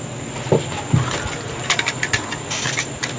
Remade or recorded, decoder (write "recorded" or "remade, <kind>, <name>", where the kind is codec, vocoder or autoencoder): recorded